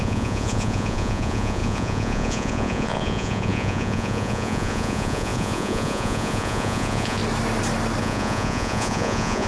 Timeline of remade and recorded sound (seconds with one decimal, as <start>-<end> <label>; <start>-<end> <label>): 0.0-7.2 remade; 7.2-8.0 recorded; 8.0-9.5 remade